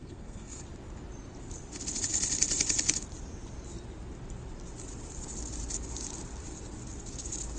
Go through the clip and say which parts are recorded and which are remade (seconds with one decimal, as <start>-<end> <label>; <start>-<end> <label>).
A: 0.0-0.6 remade; 0.6-7.6 recorded